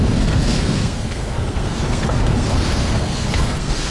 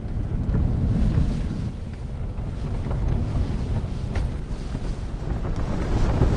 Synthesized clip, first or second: first